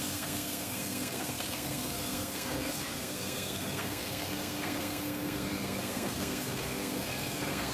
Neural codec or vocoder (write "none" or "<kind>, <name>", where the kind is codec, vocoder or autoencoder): codec, SNAC